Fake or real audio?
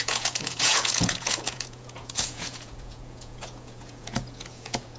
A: fake